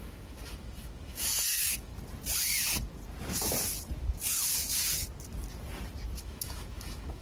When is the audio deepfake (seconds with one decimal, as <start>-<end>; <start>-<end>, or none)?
0.0-1.9; 6.2-7.2

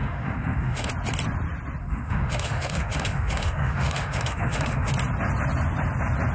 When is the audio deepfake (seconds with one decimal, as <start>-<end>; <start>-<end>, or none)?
0.0-0.9; 1.8-4.9

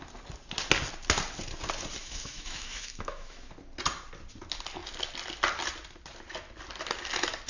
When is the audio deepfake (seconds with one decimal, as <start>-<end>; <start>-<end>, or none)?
2.0-3.5

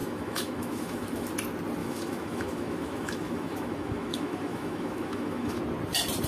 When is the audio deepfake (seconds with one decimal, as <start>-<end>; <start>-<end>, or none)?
0.0-1.3; 1.8-5.6

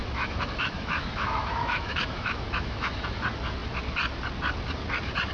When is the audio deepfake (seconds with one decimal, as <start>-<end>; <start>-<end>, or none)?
0.0-3.2

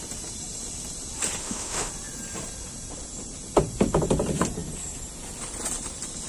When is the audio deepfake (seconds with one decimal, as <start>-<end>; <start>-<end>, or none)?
1.4-1.9

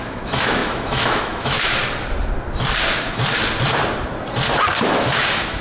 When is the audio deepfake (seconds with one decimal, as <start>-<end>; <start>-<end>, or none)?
0.0-1.8; 4.9-5.6

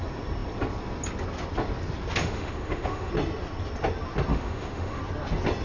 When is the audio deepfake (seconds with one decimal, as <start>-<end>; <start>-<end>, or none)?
2.2-3.1; 4.3-5.0